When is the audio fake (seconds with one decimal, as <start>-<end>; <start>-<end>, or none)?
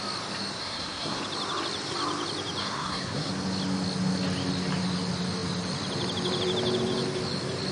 0.6-1.2; 2.6-3.3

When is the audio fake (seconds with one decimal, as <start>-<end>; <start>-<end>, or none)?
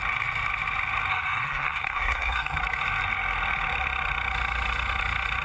1.1-2.6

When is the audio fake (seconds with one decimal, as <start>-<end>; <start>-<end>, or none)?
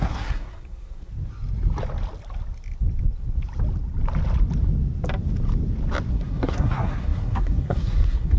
0.0-1.1; 6.1-8.4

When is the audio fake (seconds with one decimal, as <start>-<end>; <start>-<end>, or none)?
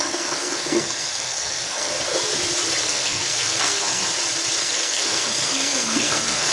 0.0-1.9; 2.8-4.0; 4.6-6.5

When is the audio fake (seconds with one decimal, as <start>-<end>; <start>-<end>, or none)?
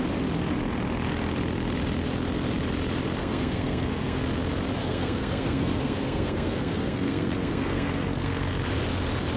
3.2-4.2; 4.8-8.5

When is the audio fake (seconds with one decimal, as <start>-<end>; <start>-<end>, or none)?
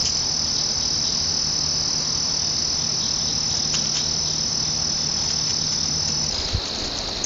none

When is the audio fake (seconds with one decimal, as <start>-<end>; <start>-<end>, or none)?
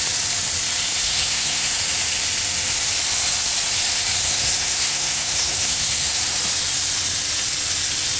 0.9-1.8; 4.2-6.2